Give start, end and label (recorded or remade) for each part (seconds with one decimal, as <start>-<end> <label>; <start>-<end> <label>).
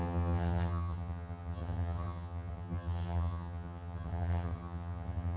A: 0.0-5.4 remade